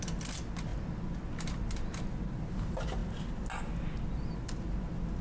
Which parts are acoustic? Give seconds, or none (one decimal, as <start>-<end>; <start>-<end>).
0.0-5.2